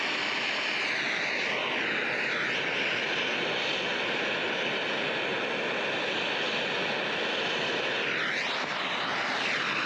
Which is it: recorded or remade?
recorded